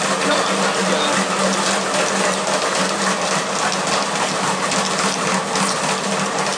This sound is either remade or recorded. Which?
recorded